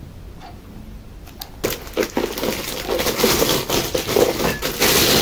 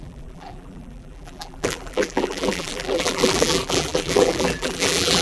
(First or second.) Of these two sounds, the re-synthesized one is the second